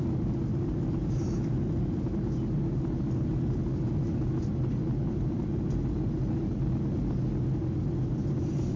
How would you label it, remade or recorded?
recorded